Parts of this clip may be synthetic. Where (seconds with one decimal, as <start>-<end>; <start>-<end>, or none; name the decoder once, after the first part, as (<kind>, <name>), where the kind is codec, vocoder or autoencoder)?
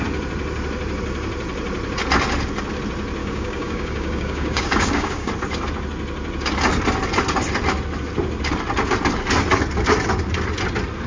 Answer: 3.2-5.3 (codec, DAC)